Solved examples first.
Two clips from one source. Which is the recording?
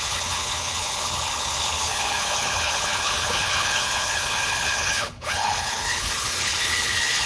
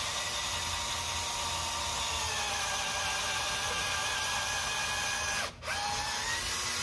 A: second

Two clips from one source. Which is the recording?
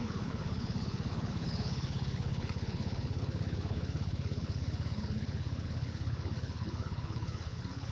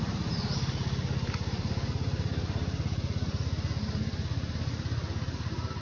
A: second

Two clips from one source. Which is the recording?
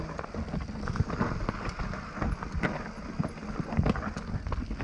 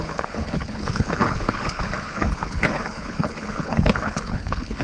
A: first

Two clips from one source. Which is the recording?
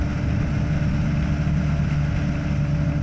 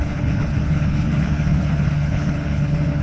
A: first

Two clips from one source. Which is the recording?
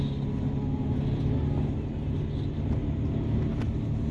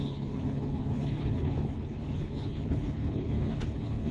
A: first